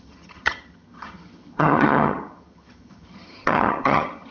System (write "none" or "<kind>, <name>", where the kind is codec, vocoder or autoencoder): vocoder, HiFi-GAN